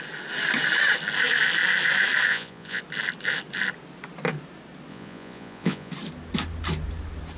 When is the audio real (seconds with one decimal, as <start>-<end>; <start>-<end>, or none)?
0.0-2.3; 2.8-4.9; 5.9-7.4